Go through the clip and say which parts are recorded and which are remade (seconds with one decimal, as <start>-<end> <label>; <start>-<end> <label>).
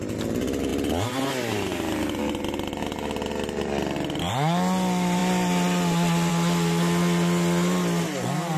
0.0-8.6 recorded